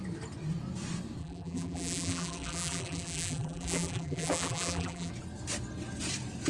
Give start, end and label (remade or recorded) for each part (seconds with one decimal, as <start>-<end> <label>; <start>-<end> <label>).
0.0-1.2 recorded; 1.2-5.1 remade; 5.1-6.5 recorded